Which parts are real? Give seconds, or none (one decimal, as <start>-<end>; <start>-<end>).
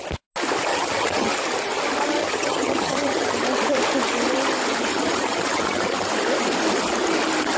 0.0-0.7; 1.3-2.2; 3.4-4.9; 6.1-7.6